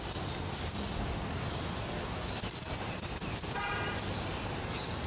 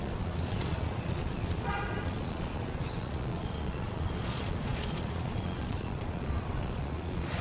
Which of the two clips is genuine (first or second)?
first